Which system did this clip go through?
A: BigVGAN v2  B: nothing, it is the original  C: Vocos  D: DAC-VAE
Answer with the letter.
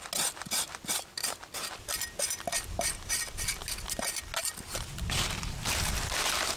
B